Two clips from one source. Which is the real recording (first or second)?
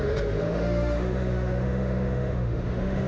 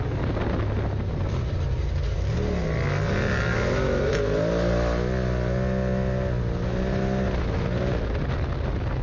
second